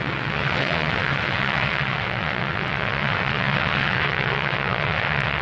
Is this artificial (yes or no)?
yes